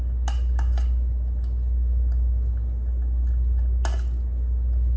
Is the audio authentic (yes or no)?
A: yes